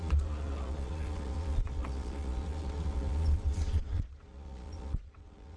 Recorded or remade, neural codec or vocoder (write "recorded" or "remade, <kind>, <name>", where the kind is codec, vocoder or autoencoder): remade, vocoder, Vocos